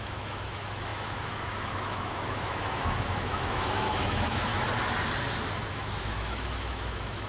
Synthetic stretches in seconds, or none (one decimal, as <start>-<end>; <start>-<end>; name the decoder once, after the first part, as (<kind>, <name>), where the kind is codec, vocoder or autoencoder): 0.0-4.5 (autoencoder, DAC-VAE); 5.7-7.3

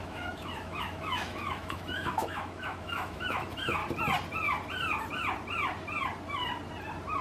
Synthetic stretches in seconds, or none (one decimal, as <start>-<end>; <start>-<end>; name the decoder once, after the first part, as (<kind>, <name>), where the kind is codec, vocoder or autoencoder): 0.0-3.8 (autoencoder, DAC-VAE)

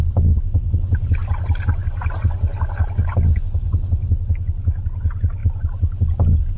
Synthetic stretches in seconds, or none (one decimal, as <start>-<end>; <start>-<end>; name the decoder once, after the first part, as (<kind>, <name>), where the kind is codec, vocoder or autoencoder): none

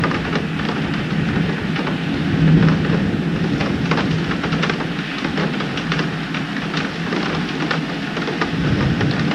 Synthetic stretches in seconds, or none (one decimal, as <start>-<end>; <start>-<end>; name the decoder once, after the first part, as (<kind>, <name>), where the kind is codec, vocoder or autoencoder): none

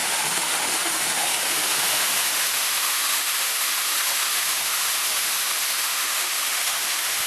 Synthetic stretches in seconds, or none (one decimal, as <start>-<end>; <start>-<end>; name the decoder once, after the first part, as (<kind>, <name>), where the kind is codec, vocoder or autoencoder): 0.0-7.3 (autoencoder, DAC-VAE)

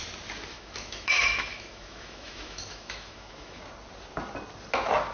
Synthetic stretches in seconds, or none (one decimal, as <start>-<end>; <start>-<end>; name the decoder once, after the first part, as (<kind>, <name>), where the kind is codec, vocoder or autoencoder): 0.5-3.6 (autoencoder, DAC-VAE)

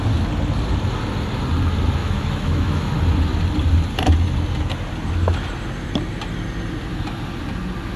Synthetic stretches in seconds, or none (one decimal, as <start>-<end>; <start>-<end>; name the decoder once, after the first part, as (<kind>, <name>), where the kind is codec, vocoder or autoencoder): 2.0-2.9 (autoencoder, DAC-VAE)